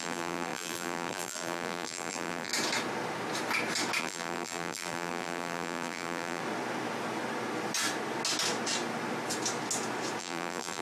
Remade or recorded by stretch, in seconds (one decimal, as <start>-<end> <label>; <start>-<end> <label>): 0.0-2.5 remade; 2.5-4.0 recorded; 4.0-6.4 remade; 6.4-10.2 recorded; 10.2-10.8 remade